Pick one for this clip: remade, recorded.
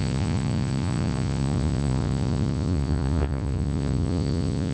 remade